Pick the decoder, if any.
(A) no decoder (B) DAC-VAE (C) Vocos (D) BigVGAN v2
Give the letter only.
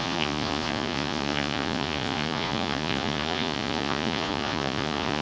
C